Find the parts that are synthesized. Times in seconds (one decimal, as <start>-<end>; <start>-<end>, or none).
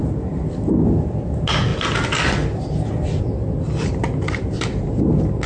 none